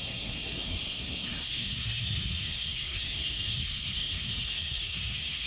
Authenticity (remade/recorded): remade